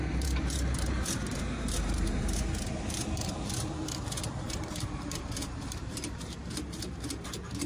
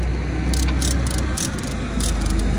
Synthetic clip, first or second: first